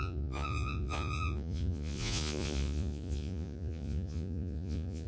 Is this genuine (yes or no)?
no